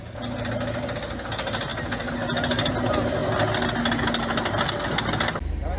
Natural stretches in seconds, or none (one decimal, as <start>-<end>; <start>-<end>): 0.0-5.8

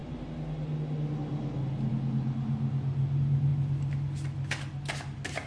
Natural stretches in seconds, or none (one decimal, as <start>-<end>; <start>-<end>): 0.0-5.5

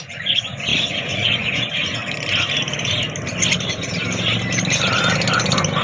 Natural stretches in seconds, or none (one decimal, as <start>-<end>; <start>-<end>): 2.0-5.8

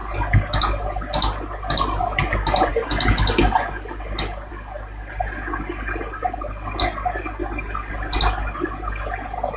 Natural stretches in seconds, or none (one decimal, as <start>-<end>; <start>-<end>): 0.0-9.6

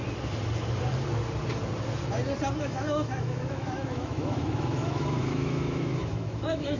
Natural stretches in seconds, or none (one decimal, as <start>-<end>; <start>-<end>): 0.0-2.6

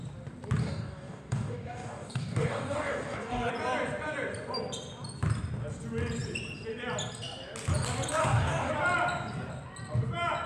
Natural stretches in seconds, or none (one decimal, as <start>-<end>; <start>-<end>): 0.0-0.6; 3.5-8.2; 8.7-10.5

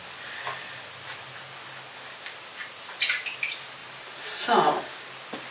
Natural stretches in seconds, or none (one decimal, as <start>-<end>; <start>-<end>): 0.0-3.8; 4.8-5.5

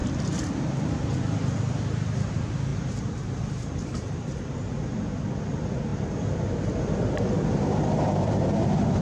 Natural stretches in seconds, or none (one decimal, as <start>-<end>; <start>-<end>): 0.0-1.2